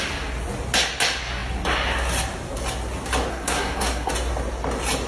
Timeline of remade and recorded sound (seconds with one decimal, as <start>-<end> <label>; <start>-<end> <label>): 0.0-3.3 recorded; 3.3-4.1 remade; 4.1-5.1 recorded